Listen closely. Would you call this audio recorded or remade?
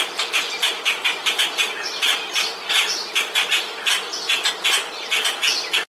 recorded